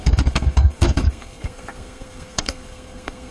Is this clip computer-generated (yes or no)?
yes